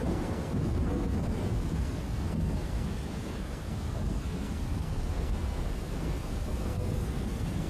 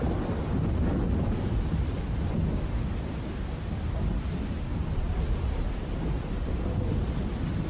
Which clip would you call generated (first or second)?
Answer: first